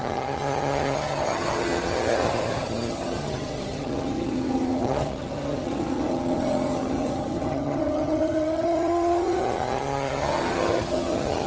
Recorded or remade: remade